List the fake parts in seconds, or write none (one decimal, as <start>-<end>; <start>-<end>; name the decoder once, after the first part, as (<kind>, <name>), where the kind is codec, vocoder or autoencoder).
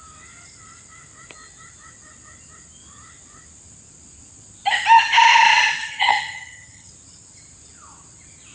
5.8-6.9 (vocoder, HiFi-GAN)